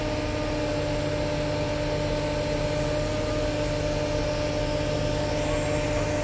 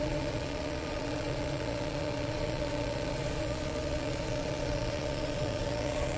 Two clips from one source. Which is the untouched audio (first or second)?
first